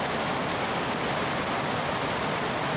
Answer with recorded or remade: recorded